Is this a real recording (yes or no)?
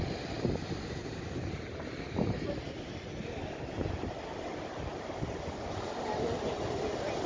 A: yes